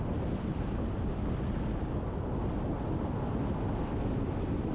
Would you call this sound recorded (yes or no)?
yes